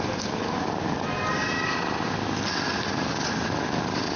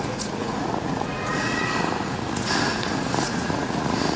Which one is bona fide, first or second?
first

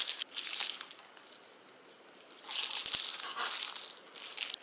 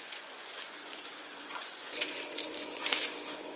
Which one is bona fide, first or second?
first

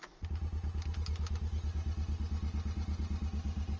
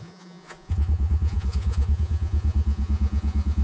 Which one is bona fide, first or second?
first